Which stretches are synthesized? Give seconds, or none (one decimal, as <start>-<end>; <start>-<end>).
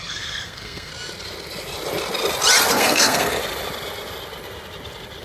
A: 0.0-0.9; 2.7-3.4